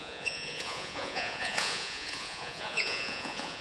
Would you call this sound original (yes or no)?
no